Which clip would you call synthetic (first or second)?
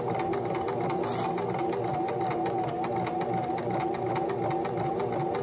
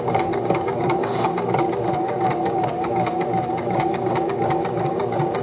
second